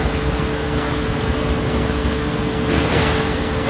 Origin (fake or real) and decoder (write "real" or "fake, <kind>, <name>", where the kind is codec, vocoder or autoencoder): fake, codec, SNAC